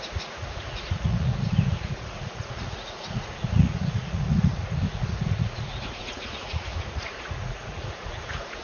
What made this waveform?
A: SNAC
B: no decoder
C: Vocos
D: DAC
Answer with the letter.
C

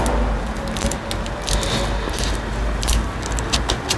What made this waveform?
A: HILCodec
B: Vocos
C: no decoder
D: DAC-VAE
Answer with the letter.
C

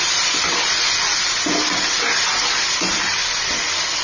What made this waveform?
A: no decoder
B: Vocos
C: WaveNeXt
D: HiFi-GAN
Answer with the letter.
A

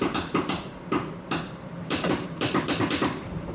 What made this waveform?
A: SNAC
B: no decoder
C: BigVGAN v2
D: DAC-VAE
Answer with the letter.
C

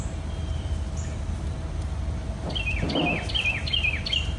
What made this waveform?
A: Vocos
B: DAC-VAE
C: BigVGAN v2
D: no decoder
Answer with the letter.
D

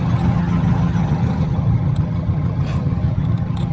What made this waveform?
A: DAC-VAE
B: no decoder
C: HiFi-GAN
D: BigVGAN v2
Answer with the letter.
C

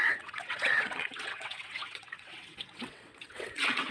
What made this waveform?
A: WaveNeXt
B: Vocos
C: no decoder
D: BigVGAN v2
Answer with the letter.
A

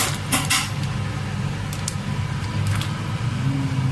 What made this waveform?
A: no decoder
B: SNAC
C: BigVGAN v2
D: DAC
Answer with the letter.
A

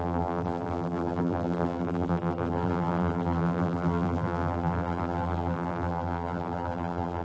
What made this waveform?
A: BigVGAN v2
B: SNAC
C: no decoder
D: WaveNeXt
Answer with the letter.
A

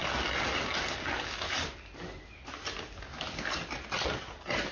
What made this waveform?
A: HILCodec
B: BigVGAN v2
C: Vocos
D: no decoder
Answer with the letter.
D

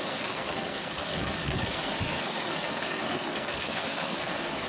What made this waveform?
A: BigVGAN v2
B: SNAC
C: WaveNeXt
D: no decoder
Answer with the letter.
B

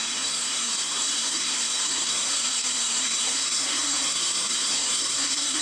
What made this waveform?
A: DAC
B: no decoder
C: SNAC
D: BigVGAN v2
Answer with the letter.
C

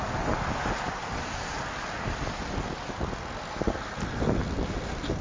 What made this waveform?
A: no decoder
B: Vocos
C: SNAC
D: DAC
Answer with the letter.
A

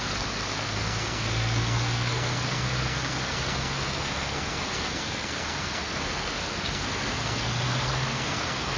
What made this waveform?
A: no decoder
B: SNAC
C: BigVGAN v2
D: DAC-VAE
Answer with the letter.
B